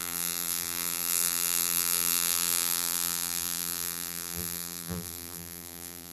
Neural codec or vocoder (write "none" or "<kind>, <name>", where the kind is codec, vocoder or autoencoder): vocoder, BigVGAN v2